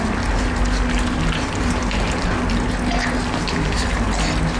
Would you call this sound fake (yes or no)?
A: no